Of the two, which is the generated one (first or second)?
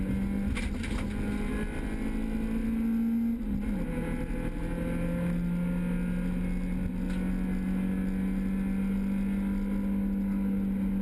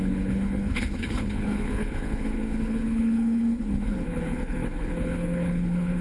second